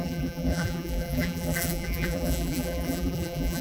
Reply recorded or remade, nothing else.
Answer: remade